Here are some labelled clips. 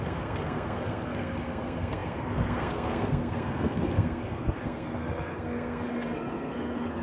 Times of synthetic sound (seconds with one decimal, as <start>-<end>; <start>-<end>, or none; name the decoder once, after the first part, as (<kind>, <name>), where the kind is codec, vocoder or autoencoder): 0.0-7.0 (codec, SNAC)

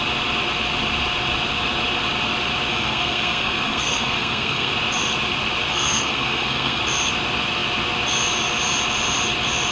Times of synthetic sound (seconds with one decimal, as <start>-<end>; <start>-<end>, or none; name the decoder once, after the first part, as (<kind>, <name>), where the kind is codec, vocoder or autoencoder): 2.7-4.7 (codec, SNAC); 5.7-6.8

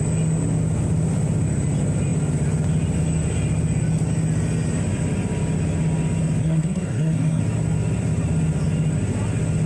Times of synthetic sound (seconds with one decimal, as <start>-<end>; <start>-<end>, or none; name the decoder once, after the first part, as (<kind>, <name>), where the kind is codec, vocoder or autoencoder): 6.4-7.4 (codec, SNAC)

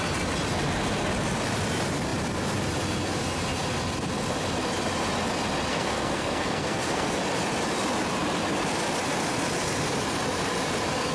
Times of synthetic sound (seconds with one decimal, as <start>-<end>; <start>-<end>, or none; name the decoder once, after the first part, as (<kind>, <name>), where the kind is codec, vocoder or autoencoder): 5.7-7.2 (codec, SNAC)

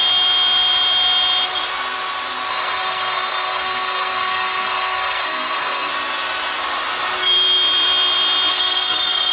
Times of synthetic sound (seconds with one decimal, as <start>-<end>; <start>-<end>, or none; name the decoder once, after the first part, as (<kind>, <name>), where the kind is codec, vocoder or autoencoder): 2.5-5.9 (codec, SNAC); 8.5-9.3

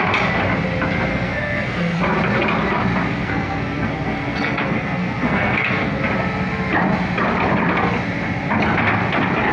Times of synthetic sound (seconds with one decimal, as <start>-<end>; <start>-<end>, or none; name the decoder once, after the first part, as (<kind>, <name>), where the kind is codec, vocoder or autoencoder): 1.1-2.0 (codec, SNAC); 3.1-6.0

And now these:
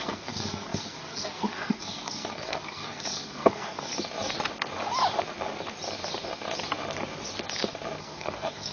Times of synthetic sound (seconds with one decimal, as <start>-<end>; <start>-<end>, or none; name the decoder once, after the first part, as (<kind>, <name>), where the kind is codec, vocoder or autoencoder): 0.0-3.9 (codec, SNAC); 8.0-8.7

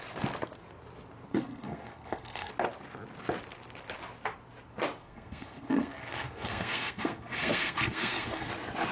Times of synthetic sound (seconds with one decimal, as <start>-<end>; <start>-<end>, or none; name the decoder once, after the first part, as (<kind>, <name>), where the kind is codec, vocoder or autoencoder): 1.3-2.5 (codec, SNAC); 5.0-8.5